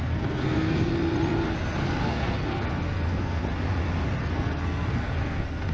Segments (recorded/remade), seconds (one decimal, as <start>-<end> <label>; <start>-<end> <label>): 0.0-0.9 remade; 0.9-2.0 recorded; 2.0-3.4 remade; 3.4-4.2 recorded; 4.2-5.7 remade